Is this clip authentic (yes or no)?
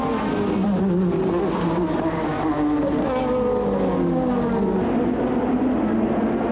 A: yes